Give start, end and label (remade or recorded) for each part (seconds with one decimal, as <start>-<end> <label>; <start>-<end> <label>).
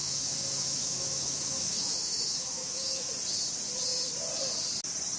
0.0-3.1 remade; 3.1-5.2 recorded